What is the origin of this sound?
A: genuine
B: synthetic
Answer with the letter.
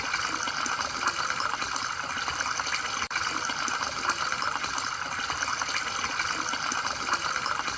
A